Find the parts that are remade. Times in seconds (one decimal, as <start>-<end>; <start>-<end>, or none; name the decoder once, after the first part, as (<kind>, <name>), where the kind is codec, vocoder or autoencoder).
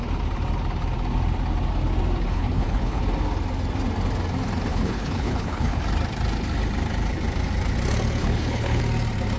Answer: 2.3-3.0 (codec, HILCodec); 4.7-5.8; 8.2-8.8